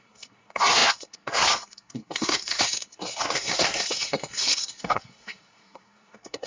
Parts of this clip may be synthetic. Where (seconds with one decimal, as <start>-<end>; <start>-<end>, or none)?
0.0-6.5